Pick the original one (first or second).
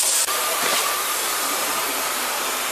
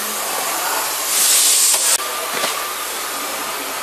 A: second